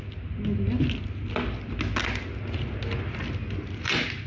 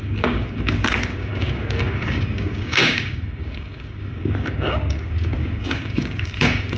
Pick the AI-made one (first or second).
second